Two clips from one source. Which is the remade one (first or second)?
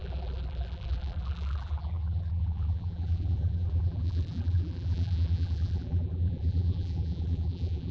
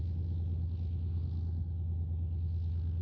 first